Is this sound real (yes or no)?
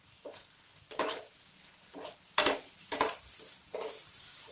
yes